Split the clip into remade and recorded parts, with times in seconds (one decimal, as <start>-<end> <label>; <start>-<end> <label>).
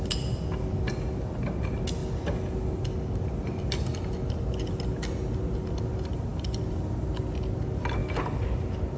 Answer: 0.0-9.0 recorded